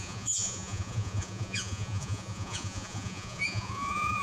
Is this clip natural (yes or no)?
no